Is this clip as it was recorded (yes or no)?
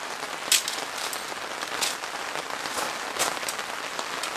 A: yes